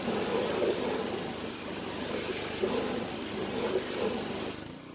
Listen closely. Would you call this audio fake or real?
real